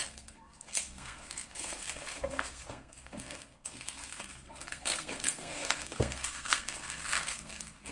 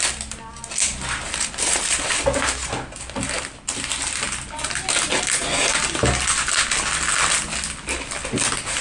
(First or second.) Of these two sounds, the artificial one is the first